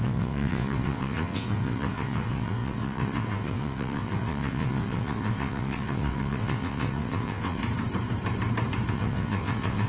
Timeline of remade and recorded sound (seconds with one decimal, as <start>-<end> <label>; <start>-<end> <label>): 0.0-7.6 remade; 7.6-8.9 recorded; 8.9-9.9 remade